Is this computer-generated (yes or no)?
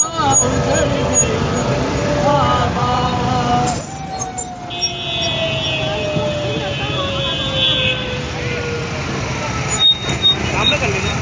no